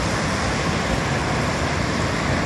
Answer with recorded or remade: recorded